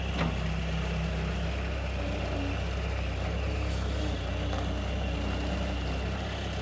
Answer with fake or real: real